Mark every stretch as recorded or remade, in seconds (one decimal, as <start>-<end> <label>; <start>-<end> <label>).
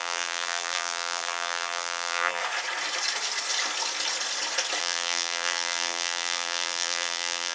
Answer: 0.0-2.4 remade; 2.4-4.8 recorded; 4.8-7.5 remade